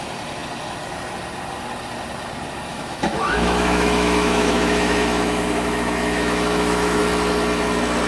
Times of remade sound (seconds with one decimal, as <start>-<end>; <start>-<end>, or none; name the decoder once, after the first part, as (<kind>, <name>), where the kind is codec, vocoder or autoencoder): 2.7-7.0 (autoencoder, DAC-VAE)

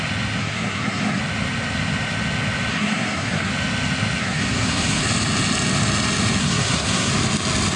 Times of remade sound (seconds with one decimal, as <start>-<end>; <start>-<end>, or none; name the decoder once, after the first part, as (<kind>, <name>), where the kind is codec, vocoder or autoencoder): 0.4-1.2 (codec, SNAC); 2.7-3.5; 4.2-5.0; 6.4-7.1

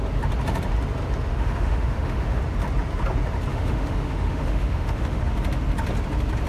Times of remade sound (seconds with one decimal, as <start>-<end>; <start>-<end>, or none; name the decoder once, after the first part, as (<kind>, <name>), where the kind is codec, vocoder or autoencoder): 1.3-2.4 (autoencoder, DAC-VAE); 3.5-5.2

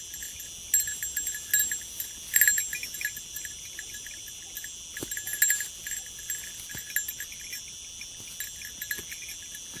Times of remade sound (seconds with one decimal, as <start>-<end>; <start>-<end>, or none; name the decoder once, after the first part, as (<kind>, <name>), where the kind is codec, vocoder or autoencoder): 3.3-4.4 (vocoder, BigVGAN v2)

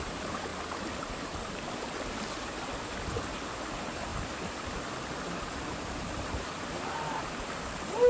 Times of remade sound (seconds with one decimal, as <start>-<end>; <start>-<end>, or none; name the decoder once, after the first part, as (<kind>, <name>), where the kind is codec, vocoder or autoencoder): 0.0-0.5 (vocoder, BigVGAN v2); 1.2-4.1; 5.6-8.1

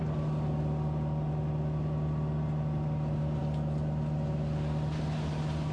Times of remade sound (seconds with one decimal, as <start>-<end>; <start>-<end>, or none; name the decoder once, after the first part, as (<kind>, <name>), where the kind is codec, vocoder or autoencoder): none